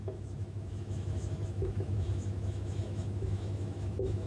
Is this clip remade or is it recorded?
remade